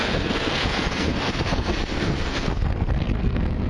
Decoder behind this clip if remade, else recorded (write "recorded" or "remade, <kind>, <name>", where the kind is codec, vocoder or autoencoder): remade, codec, SNAC